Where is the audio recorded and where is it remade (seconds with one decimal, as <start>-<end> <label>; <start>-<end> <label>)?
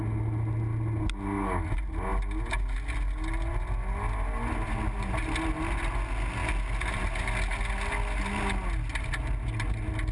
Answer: 0.0-10.1 recorded